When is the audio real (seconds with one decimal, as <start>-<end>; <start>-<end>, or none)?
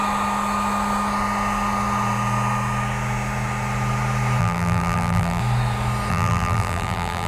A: 0.0-4.4; 5.4-6.1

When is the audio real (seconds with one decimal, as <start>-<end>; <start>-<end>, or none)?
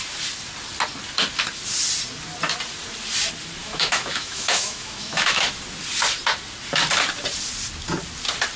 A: 0.0-3.6; 5.5-8.6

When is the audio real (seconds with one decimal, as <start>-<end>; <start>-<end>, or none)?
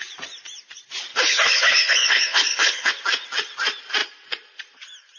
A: 0.0-1.1; 2.9-5.2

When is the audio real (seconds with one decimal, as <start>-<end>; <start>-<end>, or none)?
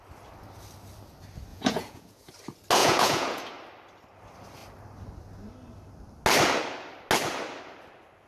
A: 0.0-1.5; 2.3-2.8; 3.4-8.3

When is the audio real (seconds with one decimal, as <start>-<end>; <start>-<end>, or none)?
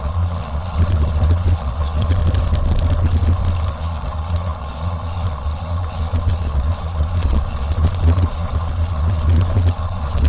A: 2.2-3.7